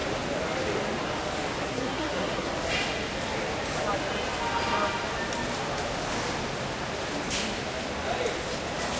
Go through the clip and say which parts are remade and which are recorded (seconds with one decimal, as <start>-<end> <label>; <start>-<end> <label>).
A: 0.0-1.6 recorded; 1.6-2.5 remade; 2.5-9.0 recorded